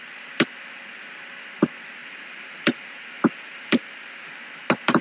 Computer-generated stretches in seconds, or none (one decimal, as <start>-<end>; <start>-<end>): 2.0-4.3

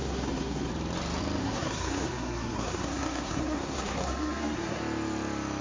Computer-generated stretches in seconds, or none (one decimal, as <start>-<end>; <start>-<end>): 0.0-0.7; 1.4-4.8

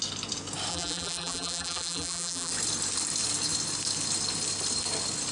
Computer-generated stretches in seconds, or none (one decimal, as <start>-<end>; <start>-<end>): 0.7-2.5

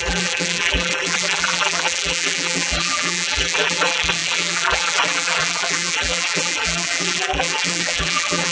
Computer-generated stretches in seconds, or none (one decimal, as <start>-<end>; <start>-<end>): 0.0-8.5

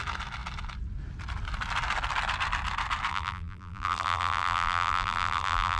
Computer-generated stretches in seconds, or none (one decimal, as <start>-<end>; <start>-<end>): 3.1-5.8